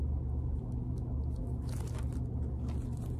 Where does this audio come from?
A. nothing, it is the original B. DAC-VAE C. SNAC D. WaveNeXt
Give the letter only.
A